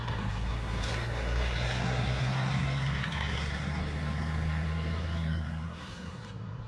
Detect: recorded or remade remade